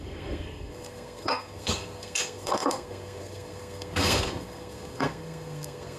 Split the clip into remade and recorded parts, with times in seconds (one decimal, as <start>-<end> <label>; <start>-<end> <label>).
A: 0.0-6.0 remade